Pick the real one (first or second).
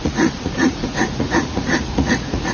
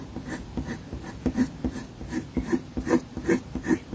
second